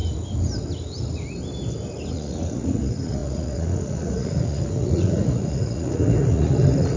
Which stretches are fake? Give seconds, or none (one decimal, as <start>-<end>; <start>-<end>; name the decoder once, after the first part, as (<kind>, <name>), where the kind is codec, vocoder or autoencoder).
2.1-7.0 (vocoder, Vocos)